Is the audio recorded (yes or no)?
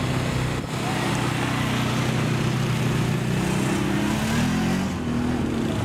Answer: yes